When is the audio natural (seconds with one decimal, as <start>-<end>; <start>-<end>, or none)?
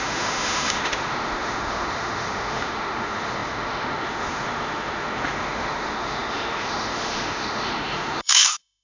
none